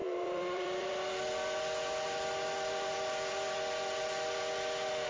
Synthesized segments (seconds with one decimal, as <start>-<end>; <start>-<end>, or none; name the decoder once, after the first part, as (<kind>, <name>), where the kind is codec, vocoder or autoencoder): 0.0-0.9 (vocoder, BigVGAN v2)